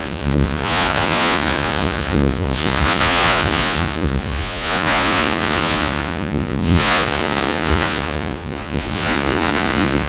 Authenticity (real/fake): fake